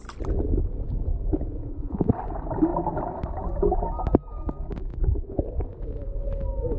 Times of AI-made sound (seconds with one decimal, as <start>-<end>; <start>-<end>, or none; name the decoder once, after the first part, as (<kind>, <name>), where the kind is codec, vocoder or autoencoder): 1.3-2.1 (vocoder, Vocos); 4.9-5.4